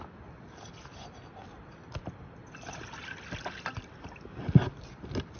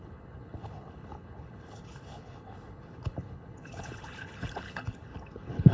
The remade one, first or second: second